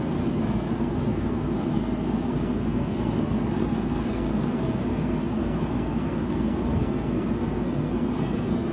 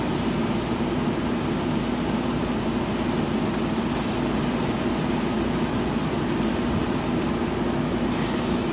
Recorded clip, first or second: second